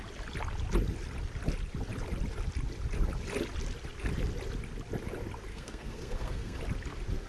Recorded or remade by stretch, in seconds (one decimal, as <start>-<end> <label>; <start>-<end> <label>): 0.0-5.5 recorded; 5.5-6.6 remade; 6.6-7.3 recorded